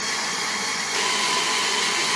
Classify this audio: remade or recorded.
remade